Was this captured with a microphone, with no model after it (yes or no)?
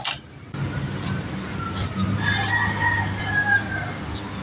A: yes